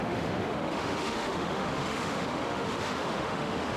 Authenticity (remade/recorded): remade